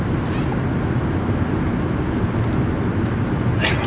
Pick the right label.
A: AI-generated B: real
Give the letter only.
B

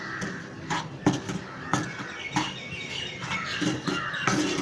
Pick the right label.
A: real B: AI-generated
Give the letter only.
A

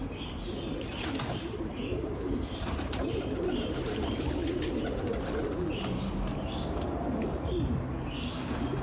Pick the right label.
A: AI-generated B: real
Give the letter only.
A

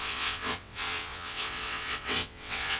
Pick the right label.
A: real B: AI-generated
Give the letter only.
B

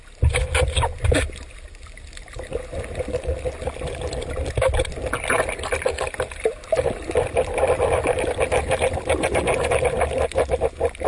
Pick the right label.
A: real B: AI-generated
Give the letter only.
A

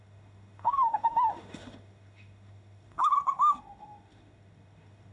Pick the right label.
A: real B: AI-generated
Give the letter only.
B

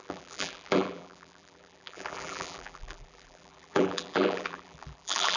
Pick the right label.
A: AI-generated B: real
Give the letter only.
A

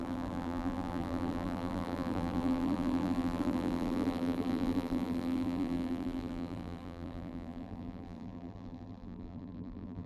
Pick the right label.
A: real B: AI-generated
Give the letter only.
B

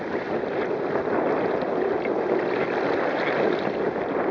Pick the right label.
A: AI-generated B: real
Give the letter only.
B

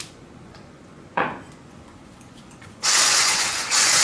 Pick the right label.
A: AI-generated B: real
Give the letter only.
A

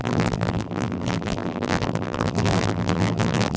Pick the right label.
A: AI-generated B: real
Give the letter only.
A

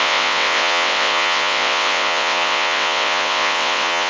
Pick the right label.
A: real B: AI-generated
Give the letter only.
B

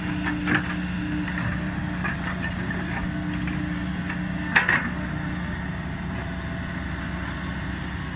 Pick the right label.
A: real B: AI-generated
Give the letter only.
A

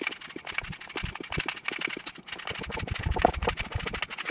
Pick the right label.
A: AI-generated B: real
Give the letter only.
B